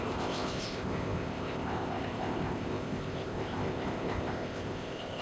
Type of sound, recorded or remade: remade